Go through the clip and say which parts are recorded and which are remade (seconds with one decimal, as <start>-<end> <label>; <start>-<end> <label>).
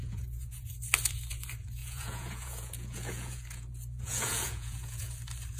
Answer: 0.0-0.7 remade; 0.7-1.8 recorded; 1.8-5.1 remade; 5.1-5.6 recorded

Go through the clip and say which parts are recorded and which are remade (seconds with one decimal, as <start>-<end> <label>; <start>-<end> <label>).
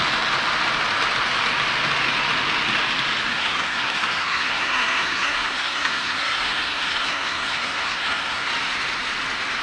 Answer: 0.0-3.3 recorded; 3.3-8.5 remade; 8.5-9.6 recorded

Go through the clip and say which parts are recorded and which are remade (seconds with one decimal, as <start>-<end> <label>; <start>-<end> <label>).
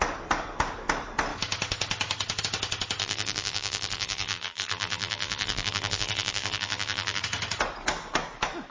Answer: 0.0-3.0 recorded; 3.0-7.2 remade; 7.2-8.7 recorded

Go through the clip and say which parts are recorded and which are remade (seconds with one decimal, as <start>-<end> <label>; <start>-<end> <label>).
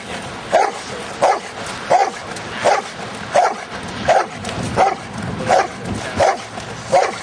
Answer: 0.0-7.2 recorded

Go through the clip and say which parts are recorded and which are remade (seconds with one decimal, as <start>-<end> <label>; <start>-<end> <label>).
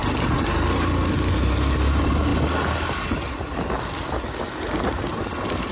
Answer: 0.0-5.7 recorded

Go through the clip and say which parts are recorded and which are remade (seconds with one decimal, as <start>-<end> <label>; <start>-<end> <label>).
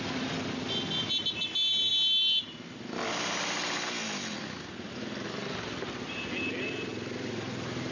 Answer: 0.0-7.9 recorded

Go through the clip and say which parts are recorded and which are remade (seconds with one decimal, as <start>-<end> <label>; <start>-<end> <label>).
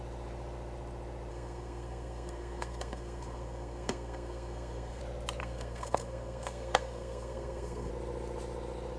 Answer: 0.0-1.3 recorded; 1.3-5.0 remade; 5.0-5.4 recorded; 5.4-7.9 remade; 7.9-9.0 recorded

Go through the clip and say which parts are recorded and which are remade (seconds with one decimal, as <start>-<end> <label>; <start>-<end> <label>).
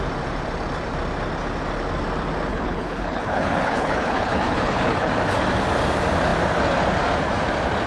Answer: 0.0-2.5 recorded; 2.5-5.1 remade; 5.1-7.9 recorded